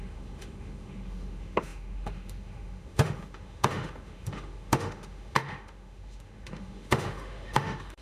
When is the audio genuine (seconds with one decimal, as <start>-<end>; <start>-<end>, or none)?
none